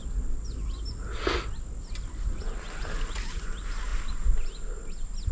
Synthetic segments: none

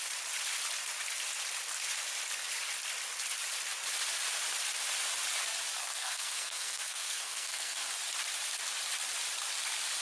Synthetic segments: 5.8-7.9 (codec, SNAC)

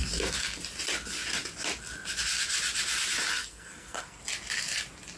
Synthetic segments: 3.3-4.2 (codec, SNAC)

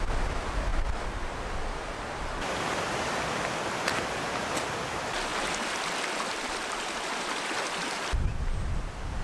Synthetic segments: none